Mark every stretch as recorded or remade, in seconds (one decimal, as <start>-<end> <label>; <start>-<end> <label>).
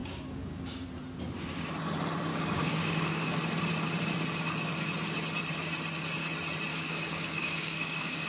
0.0-0.6 remade; 0.6-2.3 recorded; 2.3-3.3 remade; 3.3-6.7 recorded; 6.7-8.3 remade